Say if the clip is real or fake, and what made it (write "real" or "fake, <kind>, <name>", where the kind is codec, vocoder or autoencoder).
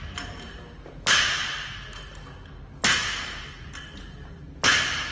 real